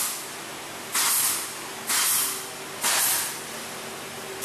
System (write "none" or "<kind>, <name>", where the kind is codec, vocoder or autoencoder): none